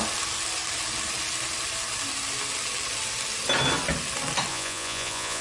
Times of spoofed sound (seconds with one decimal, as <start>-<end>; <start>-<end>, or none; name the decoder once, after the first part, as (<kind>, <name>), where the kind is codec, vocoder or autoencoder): 4.5-5.4 (vocoder, Vocos)